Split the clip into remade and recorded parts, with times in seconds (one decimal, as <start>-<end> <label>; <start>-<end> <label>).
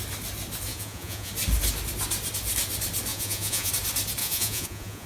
0.0-0.7 recorded; 0.7-1.3 remade; 1.3-3.1 recorded; 3.1-3.7 remade; 3.7-4.2 recorded; 4.2-5.1 remade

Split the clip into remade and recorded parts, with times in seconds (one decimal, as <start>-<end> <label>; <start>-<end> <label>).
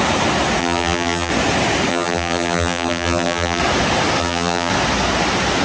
0.0-0.6 recorded; 0.6-1.3 remade; 1.3-1.9 recorded; 1.9-3.6 remade; 3.6-4.2 recorded; 4.2-4.7 remade; 4.7-5.6 recorded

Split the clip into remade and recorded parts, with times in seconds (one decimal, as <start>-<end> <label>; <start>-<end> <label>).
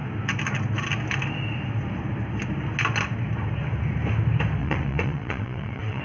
0.0-4.6 recorded; 4.6-6.0 remade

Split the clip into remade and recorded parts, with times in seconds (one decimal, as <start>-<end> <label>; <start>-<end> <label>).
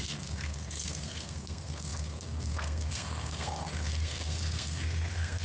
0.0-5.4 remade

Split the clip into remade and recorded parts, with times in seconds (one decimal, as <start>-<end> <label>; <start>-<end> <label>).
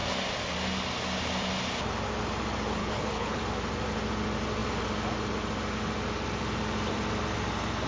0.0-2.8 recorded; 2.8-3.4 remade; 3.4-7.9 recorded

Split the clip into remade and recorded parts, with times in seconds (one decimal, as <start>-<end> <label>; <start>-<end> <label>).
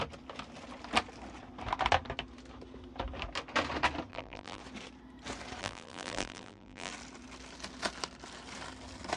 0.0-4.1 recorded; 4.1-4.6 remade; 4.6-5.6 recorded; 5.6-6.9 remade; 6.9-9.2 recorded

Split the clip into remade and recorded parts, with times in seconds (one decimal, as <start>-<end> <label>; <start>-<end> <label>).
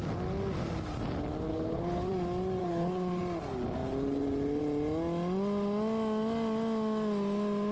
0.0-1.5 recorded; 1.5-2.1 remade; 2.1-2.6 recorded; 2.6-3.2 remade; 3.2-7.7 recorded